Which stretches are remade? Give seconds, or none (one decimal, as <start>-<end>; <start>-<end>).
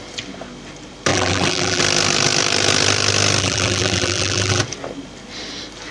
1.1-1.8; 3.4-4.6